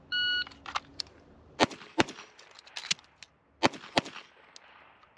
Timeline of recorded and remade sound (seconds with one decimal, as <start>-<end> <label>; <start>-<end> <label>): 0.0-0.9 recorded; 0.9-2.7 remade; 2.7-5.2 recorded